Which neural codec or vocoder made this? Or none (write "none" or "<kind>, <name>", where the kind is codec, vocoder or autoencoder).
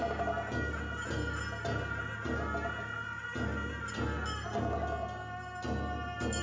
none